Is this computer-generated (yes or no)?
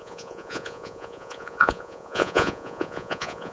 yes